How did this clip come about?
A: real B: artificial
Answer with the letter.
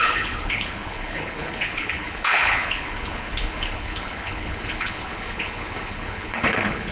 B